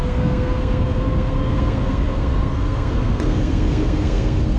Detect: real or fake fake